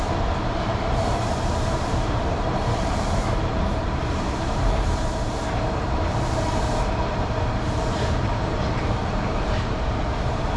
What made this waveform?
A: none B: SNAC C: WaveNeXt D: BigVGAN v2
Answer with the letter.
D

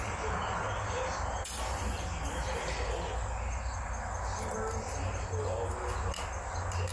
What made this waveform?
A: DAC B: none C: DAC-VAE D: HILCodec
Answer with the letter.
B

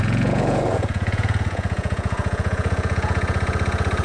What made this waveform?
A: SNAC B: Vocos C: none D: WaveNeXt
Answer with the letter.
B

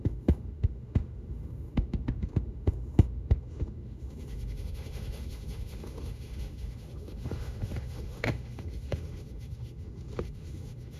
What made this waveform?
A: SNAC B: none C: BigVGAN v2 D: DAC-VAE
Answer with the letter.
D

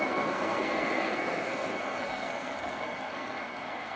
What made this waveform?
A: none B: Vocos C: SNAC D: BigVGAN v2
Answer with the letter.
C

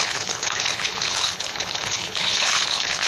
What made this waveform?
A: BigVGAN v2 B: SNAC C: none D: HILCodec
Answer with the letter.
D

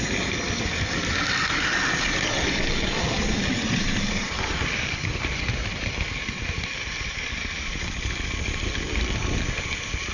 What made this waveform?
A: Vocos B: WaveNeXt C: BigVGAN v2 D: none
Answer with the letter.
C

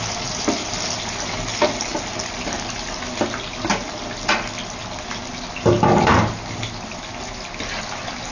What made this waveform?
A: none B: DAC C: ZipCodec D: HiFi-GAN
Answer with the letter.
A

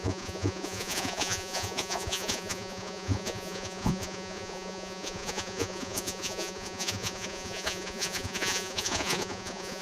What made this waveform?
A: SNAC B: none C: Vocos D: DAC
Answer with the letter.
C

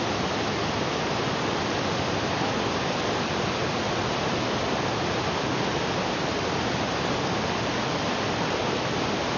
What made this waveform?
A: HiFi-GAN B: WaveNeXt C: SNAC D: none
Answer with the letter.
D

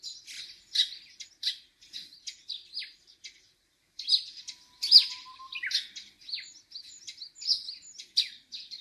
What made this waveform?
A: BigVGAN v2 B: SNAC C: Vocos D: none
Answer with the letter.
D